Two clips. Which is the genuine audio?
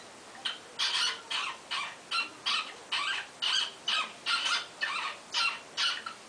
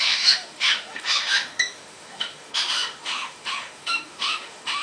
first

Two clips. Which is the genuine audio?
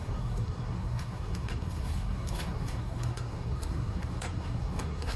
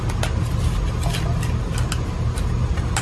second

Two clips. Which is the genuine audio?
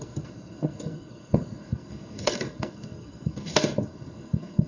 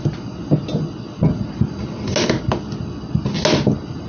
second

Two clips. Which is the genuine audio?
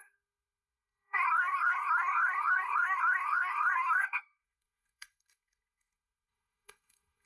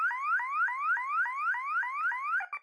second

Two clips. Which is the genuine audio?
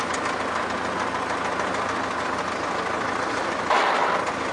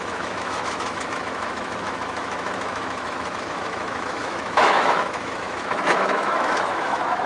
first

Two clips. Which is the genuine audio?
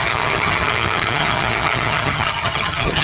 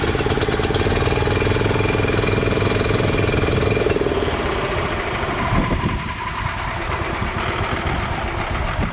second